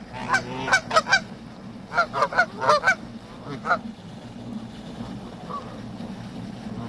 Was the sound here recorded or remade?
recorded